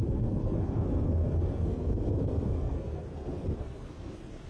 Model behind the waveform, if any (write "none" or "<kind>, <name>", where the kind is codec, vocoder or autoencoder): codec, SNAC